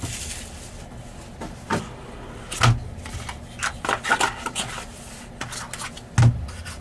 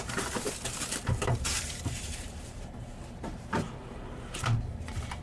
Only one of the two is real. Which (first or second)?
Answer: first